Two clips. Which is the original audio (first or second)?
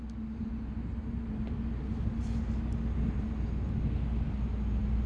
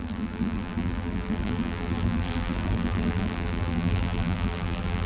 first